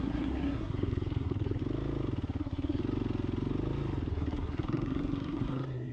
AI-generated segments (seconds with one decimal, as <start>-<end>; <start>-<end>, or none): 0.0-1.6; 2.4-2.8; 4.1-5.9